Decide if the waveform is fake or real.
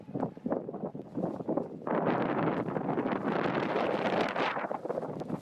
real